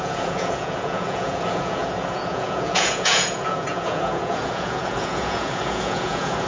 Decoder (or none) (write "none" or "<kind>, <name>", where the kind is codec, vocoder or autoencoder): vocoder, Vocos